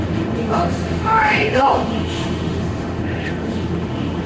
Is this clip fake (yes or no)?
yes